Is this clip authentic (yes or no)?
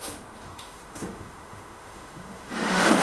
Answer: no